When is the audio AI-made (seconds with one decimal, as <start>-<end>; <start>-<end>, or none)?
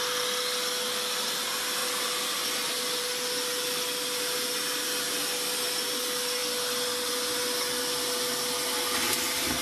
none